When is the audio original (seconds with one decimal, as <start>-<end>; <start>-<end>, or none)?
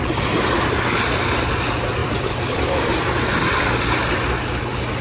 0.0-2.0; 2.9-5.0